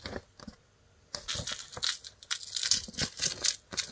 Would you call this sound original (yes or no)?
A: yes